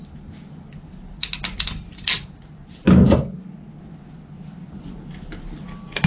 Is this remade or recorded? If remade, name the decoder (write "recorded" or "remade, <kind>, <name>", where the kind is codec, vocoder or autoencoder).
recorded